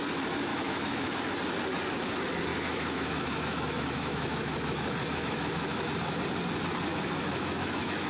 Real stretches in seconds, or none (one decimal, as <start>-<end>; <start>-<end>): 0.0-0.5; 1.2-2.5; 6.2-6.9